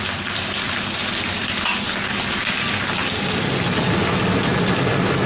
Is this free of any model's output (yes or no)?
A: yes